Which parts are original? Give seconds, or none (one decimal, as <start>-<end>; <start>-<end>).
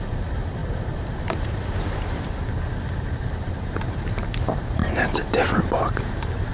none